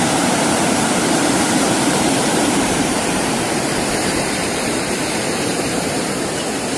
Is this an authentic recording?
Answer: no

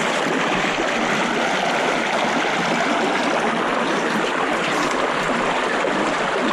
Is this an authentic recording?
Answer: yes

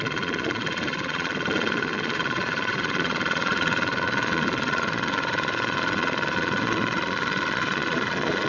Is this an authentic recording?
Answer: no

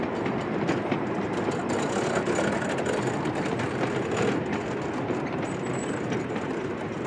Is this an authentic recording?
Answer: yes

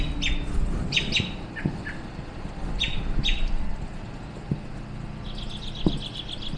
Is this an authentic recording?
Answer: yes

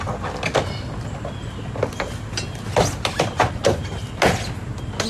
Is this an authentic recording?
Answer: yes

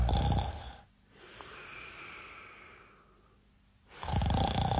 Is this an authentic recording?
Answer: yes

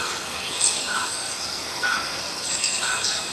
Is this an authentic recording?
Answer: no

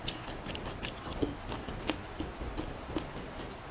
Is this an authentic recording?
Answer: yes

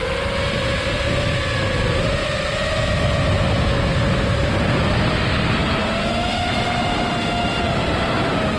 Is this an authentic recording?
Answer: yes